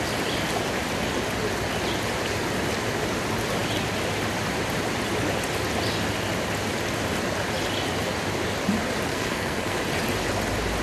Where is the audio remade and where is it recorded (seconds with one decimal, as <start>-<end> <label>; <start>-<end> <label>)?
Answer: 0.0-9.1 recorded; 9.1-9.8 remade; 9.8-10.8 recorded